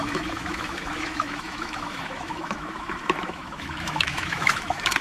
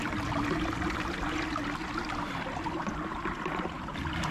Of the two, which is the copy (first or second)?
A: first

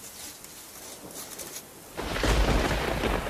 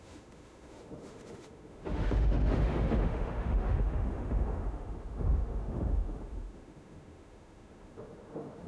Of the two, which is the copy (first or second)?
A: second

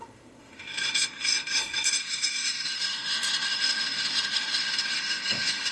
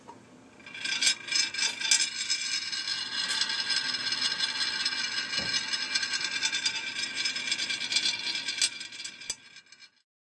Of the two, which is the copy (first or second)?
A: first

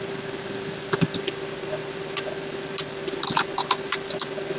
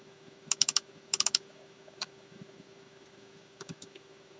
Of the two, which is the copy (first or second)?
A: second